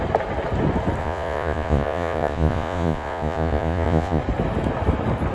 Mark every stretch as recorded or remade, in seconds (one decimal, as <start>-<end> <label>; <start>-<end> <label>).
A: 0.0-1.0 recorded; 1.0-4.2 remade; 4.2-5.3 recorded